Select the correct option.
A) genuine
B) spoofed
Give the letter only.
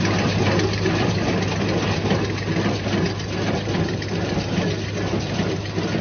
A